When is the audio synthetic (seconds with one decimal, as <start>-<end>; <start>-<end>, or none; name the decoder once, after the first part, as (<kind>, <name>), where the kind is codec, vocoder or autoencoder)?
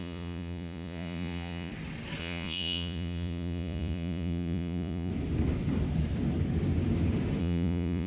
0.0-1.7 (vocoder, Vocos); 2.2-5.1; 7.4-8.1